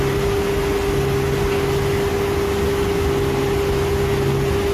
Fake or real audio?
real